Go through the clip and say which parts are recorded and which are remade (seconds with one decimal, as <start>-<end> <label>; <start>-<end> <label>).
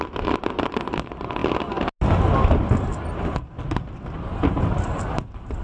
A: 0.0-5.6 recorded